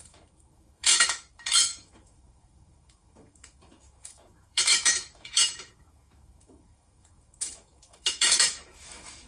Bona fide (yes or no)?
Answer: no